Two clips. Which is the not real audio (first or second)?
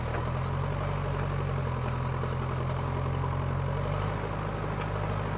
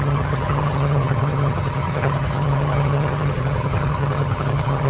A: second